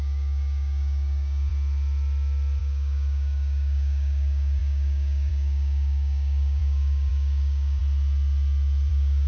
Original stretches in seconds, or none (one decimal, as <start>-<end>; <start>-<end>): 1.5-2.6; 7.8-8.9